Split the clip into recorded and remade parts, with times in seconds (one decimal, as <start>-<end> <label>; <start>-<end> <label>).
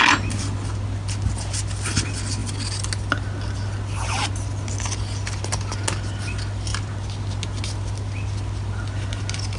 0.0-9.6 recorded